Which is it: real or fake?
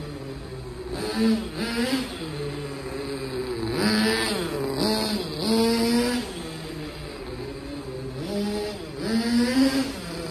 real